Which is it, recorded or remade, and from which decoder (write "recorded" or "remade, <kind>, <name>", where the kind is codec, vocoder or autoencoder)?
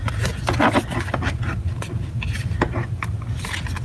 recorded